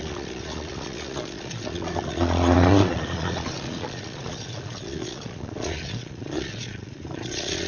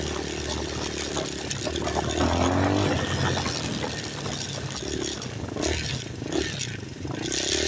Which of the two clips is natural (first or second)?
second